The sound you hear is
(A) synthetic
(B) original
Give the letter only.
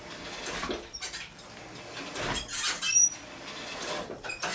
B